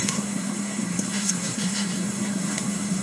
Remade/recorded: remade